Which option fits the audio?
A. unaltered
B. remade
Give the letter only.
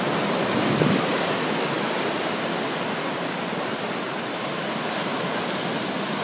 A